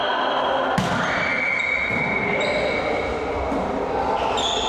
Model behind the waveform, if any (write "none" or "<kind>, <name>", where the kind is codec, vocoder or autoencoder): none